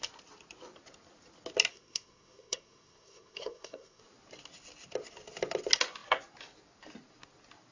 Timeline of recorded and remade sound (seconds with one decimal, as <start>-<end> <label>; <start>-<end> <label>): 0.0-1.7 recorded; 1.7-4.0 remade; 4.0-7.7 recorded